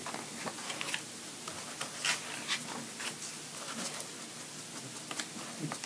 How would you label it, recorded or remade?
recorded